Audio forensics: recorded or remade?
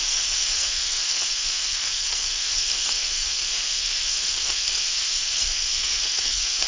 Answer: remade